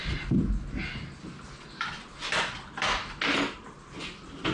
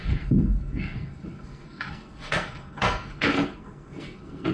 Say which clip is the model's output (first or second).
second